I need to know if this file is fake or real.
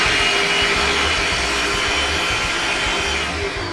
real